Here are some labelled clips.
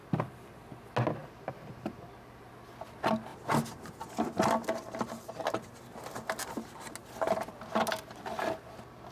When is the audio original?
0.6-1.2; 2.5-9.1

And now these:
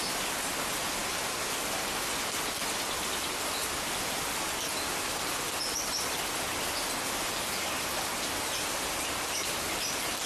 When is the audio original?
0.0-10.3

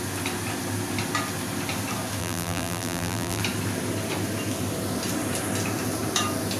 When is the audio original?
0.0-2.2; 3.4-6.6

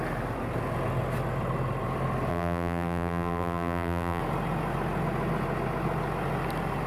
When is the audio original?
0.0-2.3; 4.2-6.9